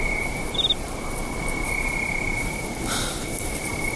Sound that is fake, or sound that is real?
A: fake